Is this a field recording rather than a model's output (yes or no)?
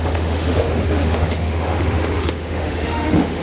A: no